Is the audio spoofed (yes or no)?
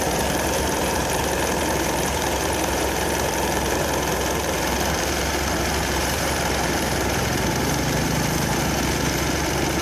yes